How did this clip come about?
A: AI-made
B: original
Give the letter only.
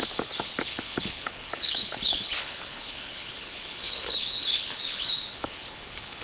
A